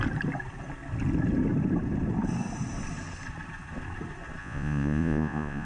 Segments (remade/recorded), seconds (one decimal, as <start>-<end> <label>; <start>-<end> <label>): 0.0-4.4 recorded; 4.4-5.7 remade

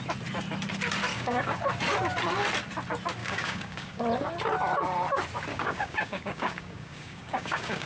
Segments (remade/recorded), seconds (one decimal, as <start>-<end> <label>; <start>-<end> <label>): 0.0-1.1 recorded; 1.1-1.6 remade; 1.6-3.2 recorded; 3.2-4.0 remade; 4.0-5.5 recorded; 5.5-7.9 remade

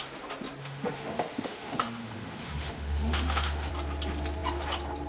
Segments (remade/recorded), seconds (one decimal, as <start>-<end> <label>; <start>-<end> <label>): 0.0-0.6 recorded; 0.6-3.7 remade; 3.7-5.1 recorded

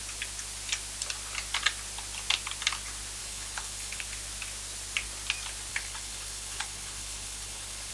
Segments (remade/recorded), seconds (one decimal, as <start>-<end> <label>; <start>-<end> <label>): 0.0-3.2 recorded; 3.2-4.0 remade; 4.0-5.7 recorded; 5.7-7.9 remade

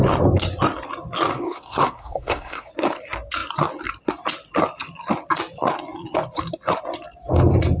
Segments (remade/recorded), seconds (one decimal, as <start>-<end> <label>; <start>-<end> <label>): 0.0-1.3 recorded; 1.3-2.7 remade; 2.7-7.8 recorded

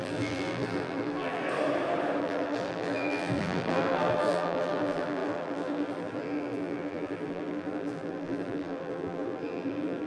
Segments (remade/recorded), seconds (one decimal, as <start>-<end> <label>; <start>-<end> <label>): 0.0-1.4 remade; 1.4-2.2 recorded; 2.2-10.1 remade

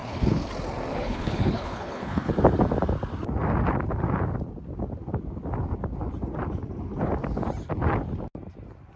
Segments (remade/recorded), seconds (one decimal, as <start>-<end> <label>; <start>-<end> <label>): 0.0-0.5 remade; 0.5-0.9 recorded; 0.9-2.3 remade; 2.3-9.0 recorded